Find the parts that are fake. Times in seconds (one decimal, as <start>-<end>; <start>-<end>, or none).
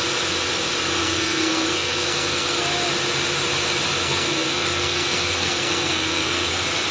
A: 1.0-2.7; 4.0-6.5